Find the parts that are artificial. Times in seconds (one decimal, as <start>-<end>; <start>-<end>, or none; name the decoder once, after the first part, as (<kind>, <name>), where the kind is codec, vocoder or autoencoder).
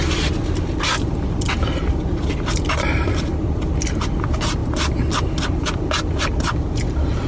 none